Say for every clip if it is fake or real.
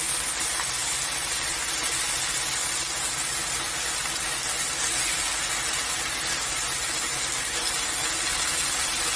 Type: real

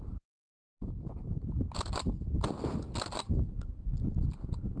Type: real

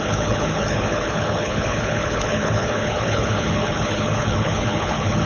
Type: fake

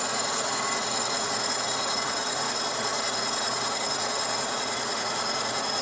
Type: fake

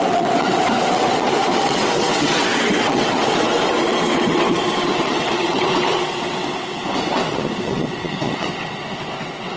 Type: fake